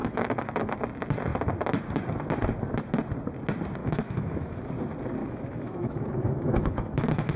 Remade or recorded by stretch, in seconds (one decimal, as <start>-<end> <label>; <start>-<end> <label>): 0.0-0.7 remade; 0.7-3.8 recorded; 3.8-4.7 remade; 4.7-5.2 recorded; 5.2-7.4 remade